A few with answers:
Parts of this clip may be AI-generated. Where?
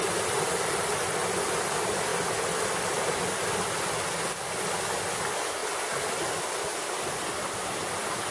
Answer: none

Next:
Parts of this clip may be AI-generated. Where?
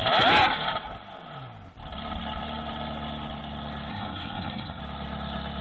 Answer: 3.9-4.8 (codec, SNAC)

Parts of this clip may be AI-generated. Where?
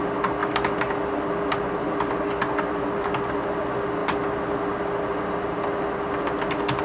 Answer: none